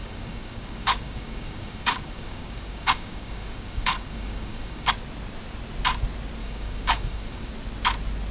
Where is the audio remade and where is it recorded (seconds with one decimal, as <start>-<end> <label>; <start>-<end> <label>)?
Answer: 0.0-4.9 remade; 4.9-6.4 recorded; 6.4-7.5 remade; 7.5-8.3 recorded